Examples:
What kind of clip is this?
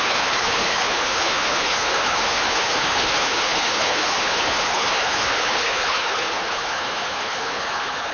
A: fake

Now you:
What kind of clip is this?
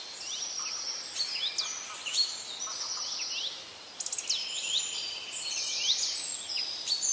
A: real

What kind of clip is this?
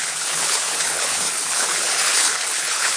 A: fake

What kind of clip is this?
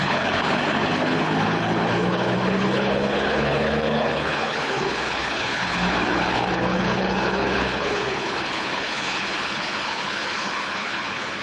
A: fake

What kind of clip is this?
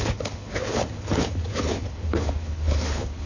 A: fake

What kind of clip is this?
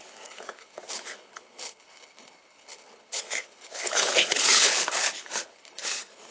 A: fake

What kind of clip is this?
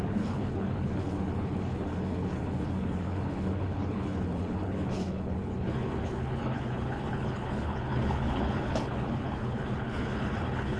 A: fake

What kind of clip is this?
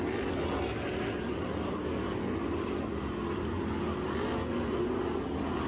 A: real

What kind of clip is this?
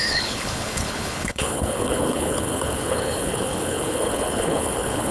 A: fake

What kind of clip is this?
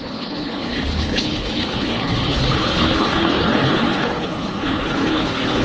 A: fake